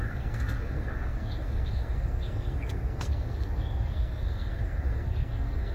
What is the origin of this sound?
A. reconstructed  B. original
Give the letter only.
A